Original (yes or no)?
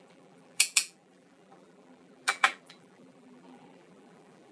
no